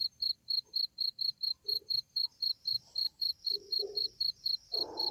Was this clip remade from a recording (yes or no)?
yes